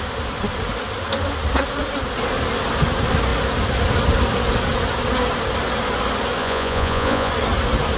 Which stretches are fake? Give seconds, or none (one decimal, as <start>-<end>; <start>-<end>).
6.4-7.3